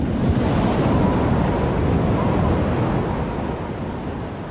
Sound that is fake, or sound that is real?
real